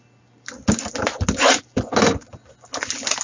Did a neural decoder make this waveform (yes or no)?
no